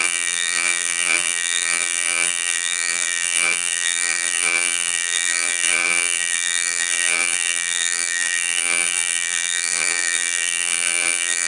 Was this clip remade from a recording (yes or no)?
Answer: yes